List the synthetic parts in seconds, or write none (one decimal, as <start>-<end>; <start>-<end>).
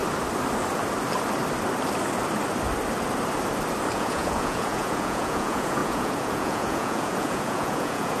3.9-8.2